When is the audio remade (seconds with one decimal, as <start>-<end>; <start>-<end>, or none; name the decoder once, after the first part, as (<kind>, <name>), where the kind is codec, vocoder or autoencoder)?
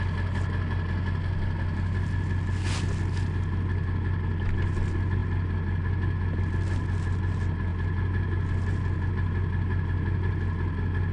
none